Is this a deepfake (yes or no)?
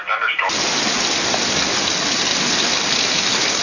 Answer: no